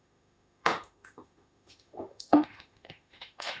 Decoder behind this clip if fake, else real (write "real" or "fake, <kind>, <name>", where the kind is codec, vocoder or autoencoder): fake, autoencoder, DAC-VAE